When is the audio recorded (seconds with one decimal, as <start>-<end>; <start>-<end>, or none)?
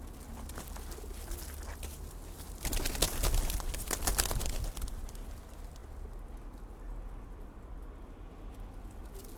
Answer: 0.0-9.4